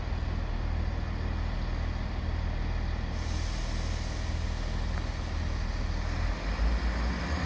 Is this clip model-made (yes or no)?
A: no